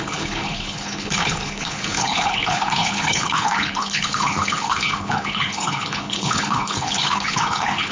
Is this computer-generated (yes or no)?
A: yes